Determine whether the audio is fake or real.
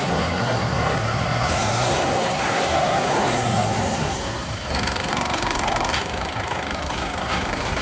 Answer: fake